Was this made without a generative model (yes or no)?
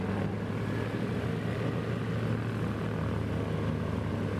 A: yes